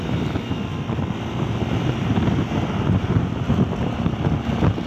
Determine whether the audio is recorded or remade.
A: recorded